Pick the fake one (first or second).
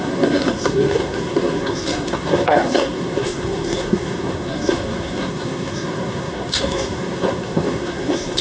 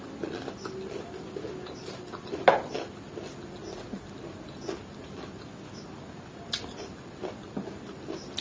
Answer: first